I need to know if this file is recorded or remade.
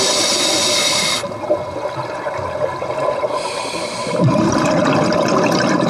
recorded